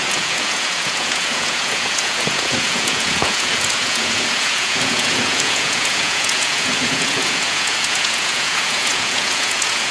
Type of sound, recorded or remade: remade